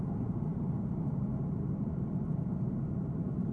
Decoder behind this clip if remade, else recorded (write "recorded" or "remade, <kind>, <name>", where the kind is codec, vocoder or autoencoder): remade, vocoder, BigVGAN v2